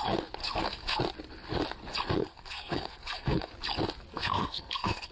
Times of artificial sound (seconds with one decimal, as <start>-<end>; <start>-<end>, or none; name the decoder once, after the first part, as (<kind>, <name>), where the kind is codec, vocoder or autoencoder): 0.4-1.0 (codec, SNAC); 2.2-3.5; 4.1-5.1